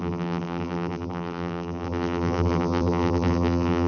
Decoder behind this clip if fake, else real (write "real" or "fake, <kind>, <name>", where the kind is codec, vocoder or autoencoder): fake, vocoder, BigVGAN v2